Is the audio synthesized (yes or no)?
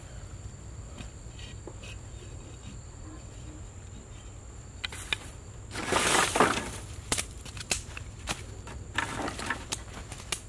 no